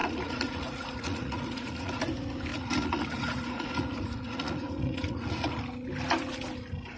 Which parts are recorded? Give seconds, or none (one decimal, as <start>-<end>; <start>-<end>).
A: 2.0-2.5; 5.6-7.0